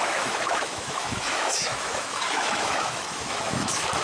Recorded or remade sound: remade